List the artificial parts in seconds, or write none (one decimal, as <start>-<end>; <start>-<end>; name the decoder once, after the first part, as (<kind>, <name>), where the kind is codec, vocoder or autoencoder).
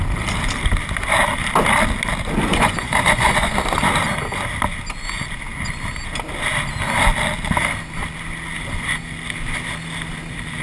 2.5-3.5 (vocoder, Vocos)